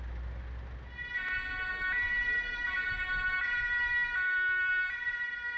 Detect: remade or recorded recorded